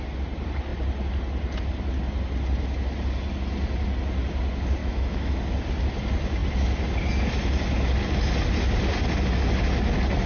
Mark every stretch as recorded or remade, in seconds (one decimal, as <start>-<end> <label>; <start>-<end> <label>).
0.0-4.8 recorded; 4.8-5.4 remade; 5.4-10.3 recorded